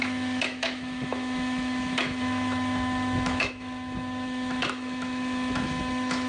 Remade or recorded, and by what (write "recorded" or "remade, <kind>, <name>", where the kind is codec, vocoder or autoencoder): remade, autoencoder, DAC-VAE